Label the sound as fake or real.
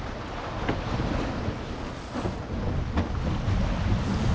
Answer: real